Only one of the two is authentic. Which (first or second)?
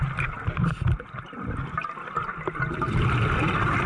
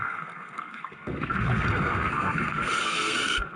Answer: first